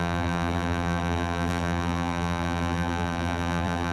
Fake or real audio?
fake